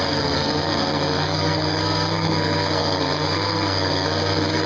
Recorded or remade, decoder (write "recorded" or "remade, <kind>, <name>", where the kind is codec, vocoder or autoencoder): remade, codec, SNAC